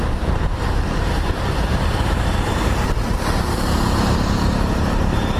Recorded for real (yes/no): no